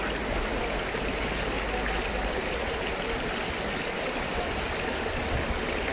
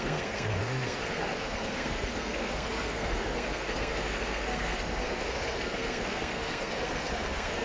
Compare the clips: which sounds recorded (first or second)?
first